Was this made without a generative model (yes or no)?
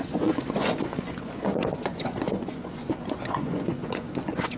no